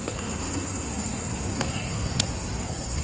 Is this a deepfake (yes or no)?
yes